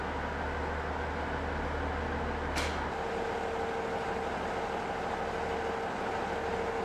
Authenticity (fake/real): real